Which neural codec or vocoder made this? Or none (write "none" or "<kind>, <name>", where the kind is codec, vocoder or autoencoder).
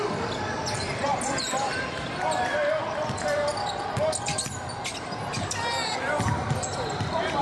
none